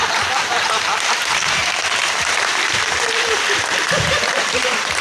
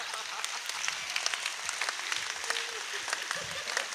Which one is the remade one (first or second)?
first